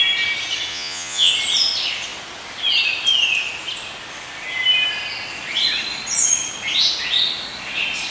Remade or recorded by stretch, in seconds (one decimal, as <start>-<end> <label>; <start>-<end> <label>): 0.0-0.7 recorded; 0.7-1.3 remade; 1.3-8.1 recorded